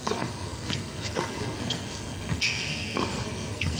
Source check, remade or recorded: remade